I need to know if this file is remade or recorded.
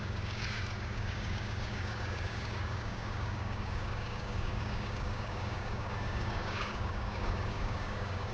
remade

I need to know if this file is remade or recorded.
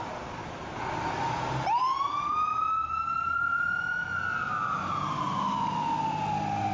recorded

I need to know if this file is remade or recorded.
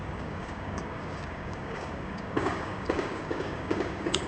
remade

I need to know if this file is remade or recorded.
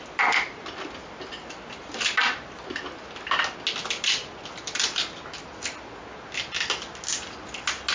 recorded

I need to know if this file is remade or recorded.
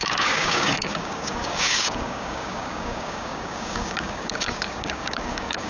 remade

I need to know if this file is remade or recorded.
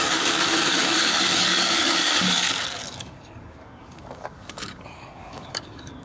remade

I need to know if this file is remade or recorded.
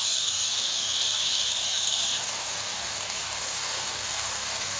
remade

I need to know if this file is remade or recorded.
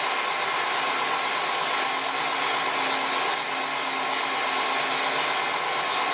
recorded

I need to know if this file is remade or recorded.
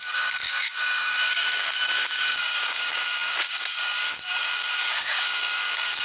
remade